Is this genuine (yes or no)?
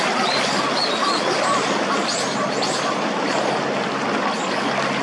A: yes